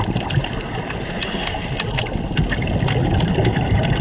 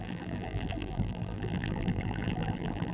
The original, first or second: first